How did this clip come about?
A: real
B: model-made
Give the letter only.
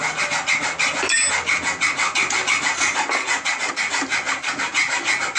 A